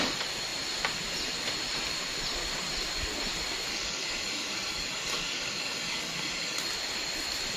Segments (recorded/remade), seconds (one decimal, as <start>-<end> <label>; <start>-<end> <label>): 0.0-3.7 recorded; 3.7-6.6 remade; 6.6-7.6 recorded